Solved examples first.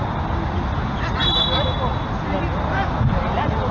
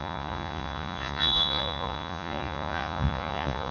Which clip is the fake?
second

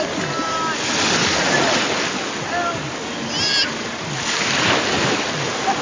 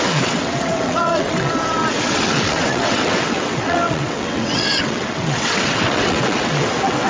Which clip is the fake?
second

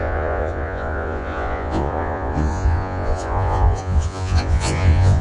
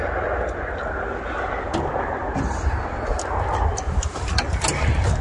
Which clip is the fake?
first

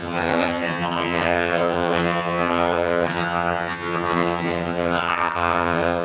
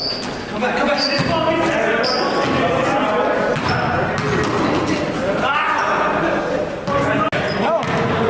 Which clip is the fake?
first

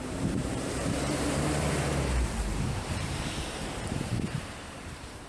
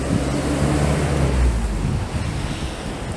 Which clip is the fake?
first